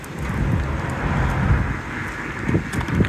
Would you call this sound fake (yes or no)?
no